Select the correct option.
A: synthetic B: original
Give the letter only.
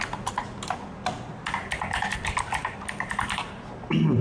B